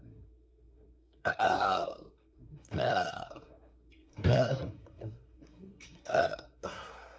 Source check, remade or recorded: remade